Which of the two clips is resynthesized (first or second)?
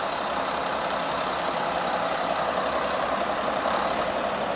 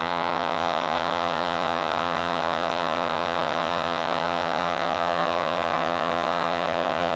second